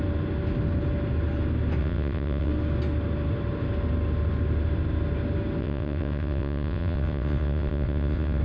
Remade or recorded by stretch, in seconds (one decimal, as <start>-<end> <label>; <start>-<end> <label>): 0.0-1.8 recorded; 1.8-2.5 remade; 2.5-5.6 recorded; 5.6-8.4 remade